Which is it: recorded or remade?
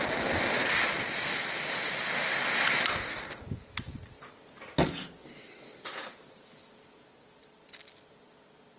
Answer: recorded